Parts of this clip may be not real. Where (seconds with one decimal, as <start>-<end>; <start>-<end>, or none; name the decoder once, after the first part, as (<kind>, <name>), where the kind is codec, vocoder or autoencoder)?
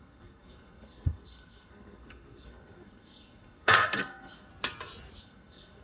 0.0-4.5 (codec, SNAC); 5.2-5.8